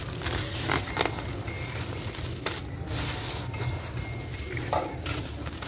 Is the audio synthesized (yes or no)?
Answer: no